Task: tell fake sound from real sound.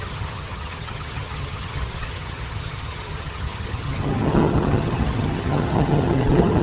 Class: fake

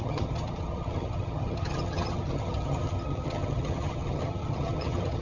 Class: fake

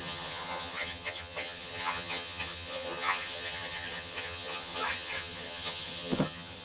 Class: fake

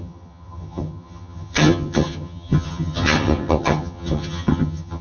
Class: fake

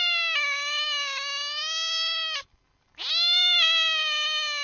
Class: real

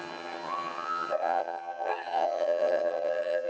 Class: fake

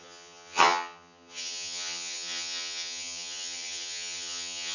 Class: fake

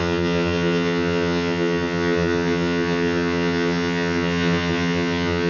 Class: fake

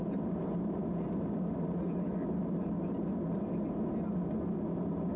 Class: real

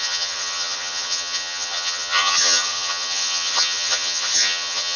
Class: fake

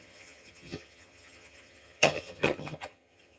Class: fake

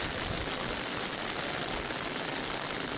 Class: real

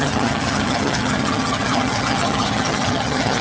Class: fake